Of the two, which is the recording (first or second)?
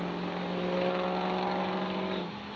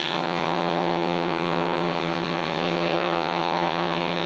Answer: first